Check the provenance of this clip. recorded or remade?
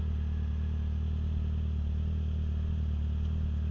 recorded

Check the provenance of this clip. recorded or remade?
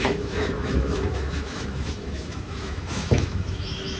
remade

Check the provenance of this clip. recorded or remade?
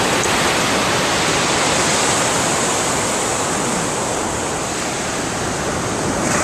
recorded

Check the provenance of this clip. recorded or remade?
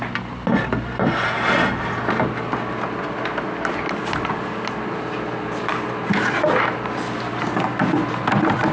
recorded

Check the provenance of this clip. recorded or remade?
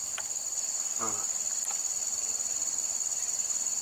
recorded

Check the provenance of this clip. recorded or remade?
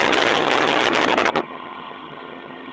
remade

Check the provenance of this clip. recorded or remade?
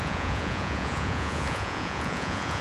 remade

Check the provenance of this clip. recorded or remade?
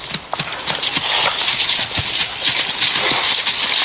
recorded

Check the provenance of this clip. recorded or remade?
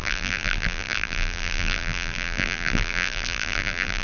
remade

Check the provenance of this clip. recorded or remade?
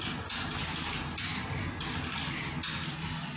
recorded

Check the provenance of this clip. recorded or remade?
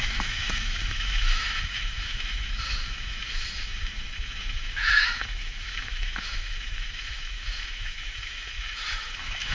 remade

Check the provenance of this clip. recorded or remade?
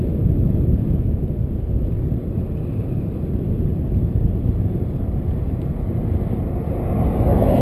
recorded